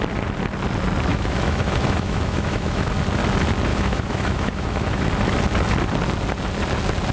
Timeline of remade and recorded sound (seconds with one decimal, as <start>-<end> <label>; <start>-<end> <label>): 0.0-1.1 recorded; 1.1-2.9 remade; 2.9-3.7 recorded; 3.7-5.1 remade; 5.1-7.1 recorded